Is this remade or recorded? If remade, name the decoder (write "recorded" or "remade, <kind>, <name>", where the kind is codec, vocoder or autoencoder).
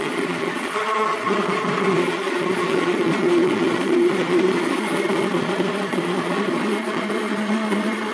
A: remade, vocoder, Vocos